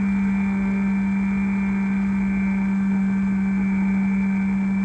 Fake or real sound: real